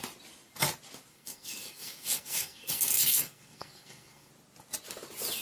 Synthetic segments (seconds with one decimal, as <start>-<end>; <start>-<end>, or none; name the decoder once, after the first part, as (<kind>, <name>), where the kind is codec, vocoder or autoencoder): 1.1-4.3 (codec, SNAC)

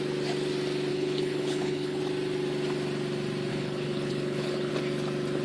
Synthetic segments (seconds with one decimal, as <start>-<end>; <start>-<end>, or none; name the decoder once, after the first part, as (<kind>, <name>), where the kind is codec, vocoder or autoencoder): 0.9-2.0 (codec, HILCodec); 3.5-4.7

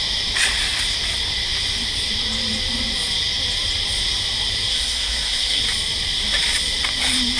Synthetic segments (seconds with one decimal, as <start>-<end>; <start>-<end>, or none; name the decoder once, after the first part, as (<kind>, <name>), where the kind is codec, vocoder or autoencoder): 4.7-5.6 (codec, SNAC)

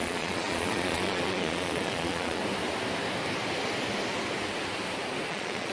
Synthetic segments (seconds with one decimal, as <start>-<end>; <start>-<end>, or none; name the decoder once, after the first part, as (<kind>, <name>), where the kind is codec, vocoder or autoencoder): 0.0-2.4 (vocoder, Vocos); 5.3-5.7